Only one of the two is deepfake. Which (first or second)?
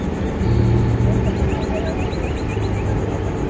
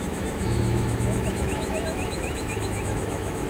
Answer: second